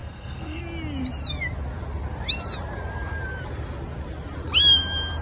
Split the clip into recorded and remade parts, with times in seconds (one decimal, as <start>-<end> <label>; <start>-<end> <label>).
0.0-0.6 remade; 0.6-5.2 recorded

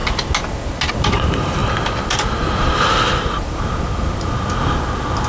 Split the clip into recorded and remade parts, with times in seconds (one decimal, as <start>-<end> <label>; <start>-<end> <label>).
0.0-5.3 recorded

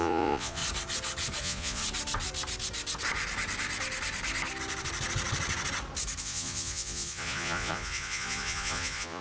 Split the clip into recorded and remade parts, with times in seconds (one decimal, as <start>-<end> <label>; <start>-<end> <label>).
0.0-0.6 remade; 0.6-1.4 recorded; 1.4-1.8 remade; 1.8-6.2 recorded; 6.2-9.2 remade

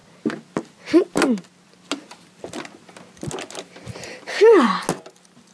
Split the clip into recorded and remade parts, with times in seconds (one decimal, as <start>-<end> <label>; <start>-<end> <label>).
0.0-5.5 recorded

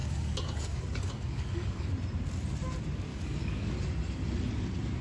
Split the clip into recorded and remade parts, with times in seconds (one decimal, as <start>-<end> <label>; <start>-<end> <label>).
0.0-1.9 remade; 1.9-3.1 recorded; 3.1-3.7 remade; 3.7-5.0 recorded

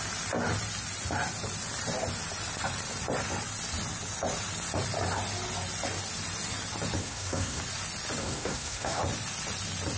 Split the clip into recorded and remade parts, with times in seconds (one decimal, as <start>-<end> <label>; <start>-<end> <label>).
0.0-7.0 recorded; 7.0-7.6 remade; 7.6-8.2 recorded; 8.2-9.0 remade; 9.0-10.0 recorded